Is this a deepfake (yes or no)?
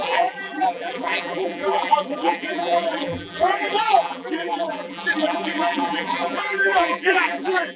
yes